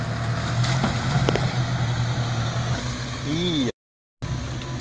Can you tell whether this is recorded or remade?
recorded